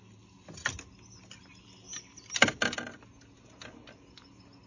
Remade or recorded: recorded